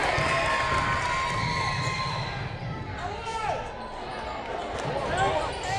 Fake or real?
real